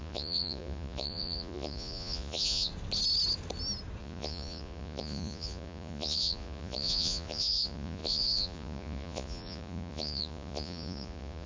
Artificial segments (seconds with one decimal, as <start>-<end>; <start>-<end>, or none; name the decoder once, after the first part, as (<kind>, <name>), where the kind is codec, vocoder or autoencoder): 0.0-2.7 (vocoder, Vocos); 4.0-11.5